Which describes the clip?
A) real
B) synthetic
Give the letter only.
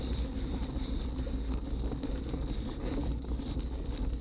A